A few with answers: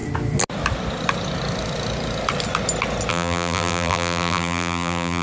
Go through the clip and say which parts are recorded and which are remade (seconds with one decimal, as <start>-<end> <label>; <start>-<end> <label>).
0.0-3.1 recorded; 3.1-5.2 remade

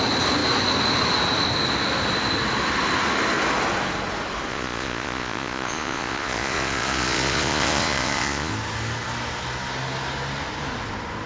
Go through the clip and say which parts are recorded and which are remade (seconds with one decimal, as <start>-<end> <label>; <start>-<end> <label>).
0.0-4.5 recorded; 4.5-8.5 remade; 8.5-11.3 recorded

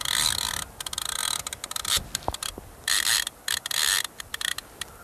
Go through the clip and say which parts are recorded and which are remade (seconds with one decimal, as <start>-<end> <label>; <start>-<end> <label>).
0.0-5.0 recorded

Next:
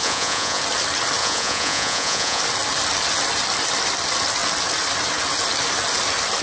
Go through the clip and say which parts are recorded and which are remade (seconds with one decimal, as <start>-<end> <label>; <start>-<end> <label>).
0.0-0.6 remade; 0.6-1.2 recorded; 1.2-2.4 remade; 2.4-6.4 recorded

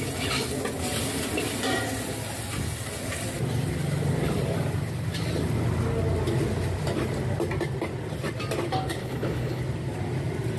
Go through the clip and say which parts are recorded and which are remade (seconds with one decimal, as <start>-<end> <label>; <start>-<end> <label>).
0.0-9.0 recorded; 9.0-9.6 remade; 9.6-10.6 recorded